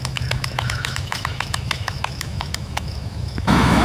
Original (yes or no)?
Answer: no